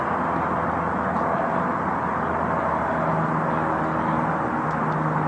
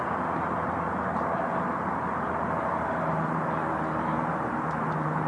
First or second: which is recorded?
first